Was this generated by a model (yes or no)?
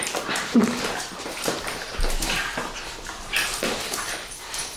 yes